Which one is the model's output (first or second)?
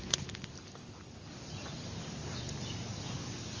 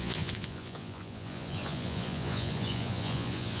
second